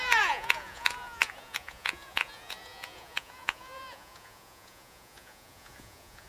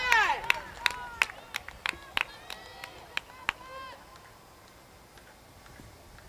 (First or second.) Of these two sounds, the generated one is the first